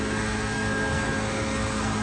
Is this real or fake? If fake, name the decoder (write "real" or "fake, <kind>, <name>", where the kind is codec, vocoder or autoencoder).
fake, codec, SNAC